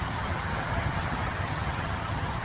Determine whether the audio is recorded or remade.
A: remade